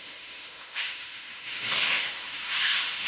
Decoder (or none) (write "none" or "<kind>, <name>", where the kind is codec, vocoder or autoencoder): autoencoder, DAC-VAE